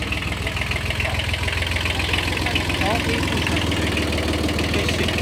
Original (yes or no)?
yes